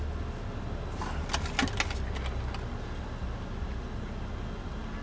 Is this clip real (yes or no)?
yes